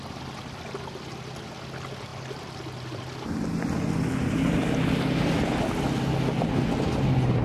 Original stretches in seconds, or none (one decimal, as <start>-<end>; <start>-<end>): 0.0-7.4